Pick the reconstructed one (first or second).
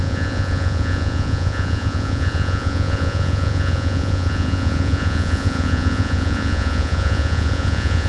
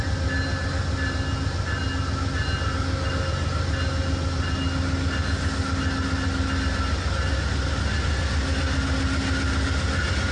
first